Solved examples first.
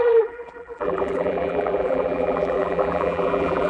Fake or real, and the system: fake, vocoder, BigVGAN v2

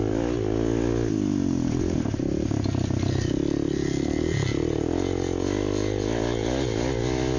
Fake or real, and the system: real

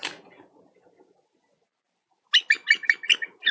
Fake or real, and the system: real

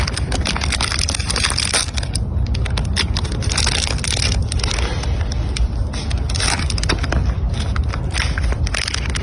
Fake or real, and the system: real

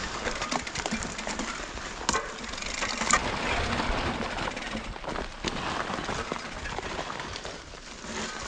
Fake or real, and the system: real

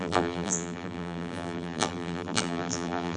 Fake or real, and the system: fake, vocoder, BigVGAN v2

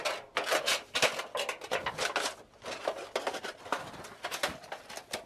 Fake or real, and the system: real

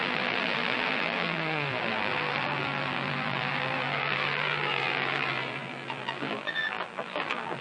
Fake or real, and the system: fake, vocoder, BigVGAN v2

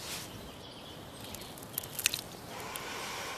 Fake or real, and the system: real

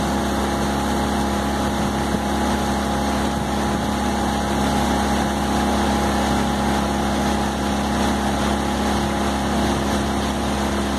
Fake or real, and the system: real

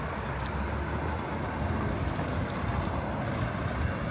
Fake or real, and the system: real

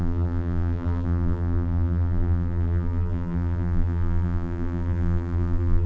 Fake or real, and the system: fake, vocoder, BigVGAN v2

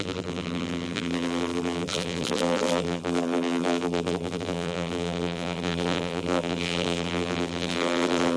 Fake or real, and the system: fake, vocoder, BigVGAN v2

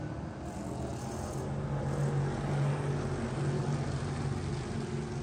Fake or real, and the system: real